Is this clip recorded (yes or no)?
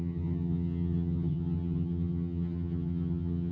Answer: no